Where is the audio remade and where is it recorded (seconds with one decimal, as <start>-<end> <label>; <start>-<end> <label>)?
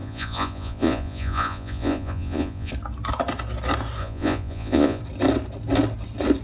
0.0-2.7 remade; 2.7-4.0 recorded; 4.0-5.0 remade; 5.0-6.4 recorded